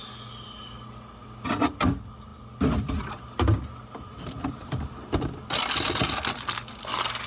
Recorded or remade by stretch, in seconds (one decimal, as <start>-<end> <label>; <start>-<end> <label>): 0.0-7.3 recorded